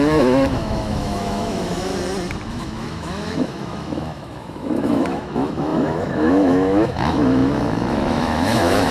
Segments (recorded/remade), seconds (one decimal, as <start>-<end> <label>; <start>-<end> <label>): 0.0-1.9 remade; 1.9-2.5 recorded; 2.5-8.9 remade